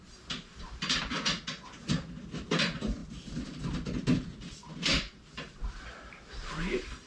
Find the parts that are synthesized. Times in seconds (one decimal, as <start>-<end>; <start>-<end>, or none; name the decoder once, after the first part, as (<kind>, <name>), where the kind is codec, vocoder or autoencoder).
0.0-3.0 (vocoder, BigVGAN v2); 4.4-7.1